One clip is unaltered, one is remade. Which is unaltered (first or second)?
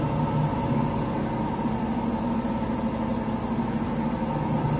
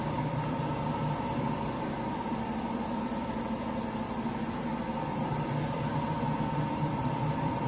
first